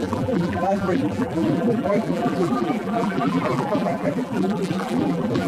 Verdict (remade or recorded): remade